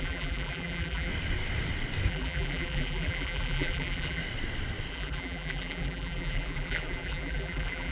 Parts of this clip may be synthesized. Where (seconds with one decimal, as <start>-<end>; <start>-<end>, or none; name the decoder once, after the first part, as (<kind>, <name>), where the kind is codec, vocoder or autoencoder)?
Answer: 0.0-1.1 (vocoder, BigVGAN v2); 2.1-4.2; 4.9-7.9